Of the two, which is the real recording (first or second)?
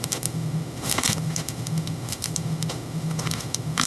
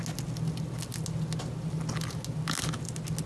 second